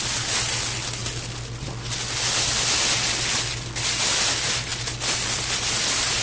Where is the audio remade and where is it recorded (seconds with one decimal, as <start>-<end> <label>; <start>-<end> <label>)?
0.0-6.2 recorded